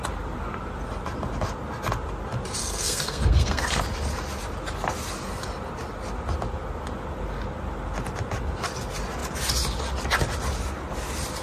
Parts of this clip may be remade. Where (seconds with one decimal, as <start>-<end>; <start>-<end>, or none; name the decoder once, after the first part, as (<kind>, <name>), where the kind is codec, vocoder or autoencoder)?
2.6-3.8 (codec, SNAC)